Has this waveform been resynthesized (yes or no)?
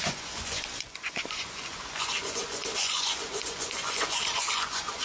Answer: yes